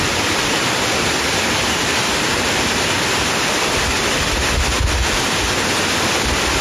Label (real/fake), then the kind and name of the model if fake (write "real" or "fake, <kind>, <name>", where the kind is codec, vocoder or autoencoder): real